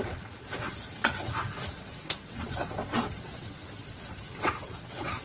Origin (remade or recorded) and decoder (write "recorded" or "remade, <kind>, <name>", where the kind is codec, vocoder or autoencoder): remade, vocoder, WaveNeXt